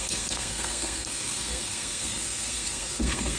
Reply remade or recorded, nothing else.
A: remade